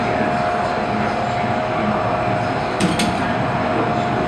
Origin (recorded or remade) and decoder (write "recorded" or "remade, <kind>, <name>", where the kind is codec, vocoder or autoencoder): recorded